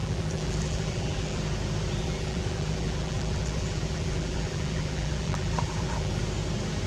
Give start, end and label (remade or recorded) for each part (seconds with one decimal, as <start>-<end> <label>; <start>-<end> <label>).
0.0-1.4 remade; 1.4-2.0 recorded; 2.0-6.1 remade; 6.1-6.9 recorded